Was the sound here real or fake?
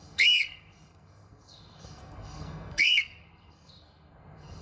fake